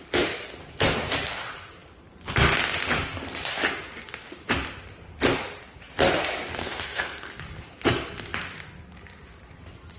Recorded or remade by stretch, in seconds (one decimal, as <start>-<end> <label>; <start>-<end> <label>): 0.0-6.6 recorded; 6.6-7.3 remade; 7.3-10.0 recorded